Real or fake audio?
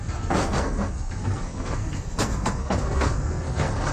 fake